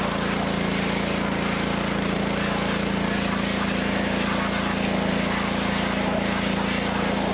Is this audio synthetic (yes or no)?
no